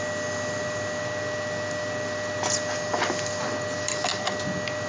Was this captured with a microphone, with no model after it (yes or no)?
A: yes